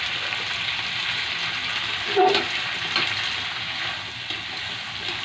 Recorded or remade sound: recorded